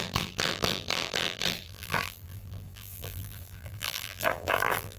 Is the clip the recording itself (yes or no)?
no